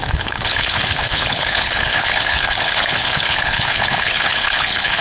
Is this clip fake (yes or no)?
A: yes